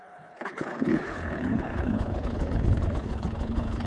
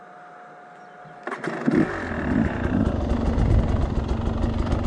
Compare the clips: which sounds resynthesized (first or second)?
first